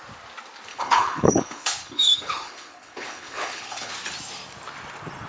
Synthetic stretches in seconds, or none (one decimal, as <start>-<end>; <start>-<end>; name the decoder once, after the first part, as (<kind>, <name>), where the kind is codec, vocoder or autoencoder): 0.7-3.9 (codec, HILCodec)